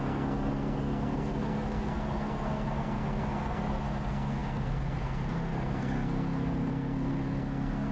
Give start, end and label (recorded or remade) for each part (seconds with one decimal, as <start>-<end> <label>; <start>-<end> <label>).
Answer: 0.0-7.9 remade